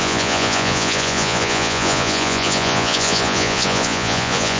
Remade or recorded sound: remade